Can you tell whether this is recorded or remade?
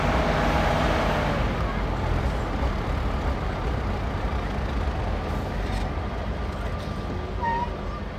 recorded